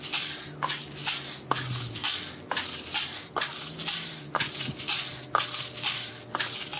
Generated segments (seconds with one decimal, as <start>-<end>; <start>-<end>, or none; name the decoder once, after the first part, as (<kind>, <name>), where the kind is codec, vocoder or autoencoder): none